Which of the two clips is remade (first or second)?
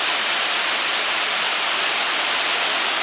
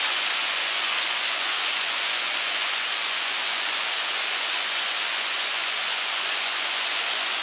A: second